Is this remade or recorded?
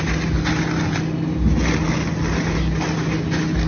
recorded